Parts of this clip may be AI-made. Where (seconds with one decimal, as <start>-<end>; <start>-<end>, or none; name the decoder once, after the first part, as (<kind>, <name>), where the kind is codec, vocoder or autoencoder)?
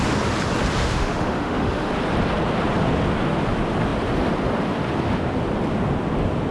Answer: 0.8-1.9 (autoencoder, DAC-VAE)